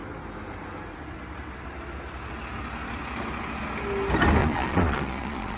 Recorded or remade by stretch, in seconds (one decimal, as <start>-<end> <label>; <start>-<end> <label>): 0.0-4.4 recorded; 4.4-5.6 remade